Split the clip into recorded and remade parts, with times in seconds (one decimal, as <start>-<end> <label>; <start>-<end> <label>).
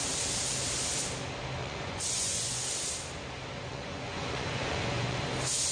0.0-1.6 recorded; 1.6-2.6 remade; 2.6-3.7 recorded; 3.7-5.2 remade; 5.2-5.7 recorded